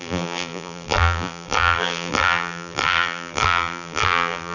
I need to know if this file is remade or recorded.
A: remade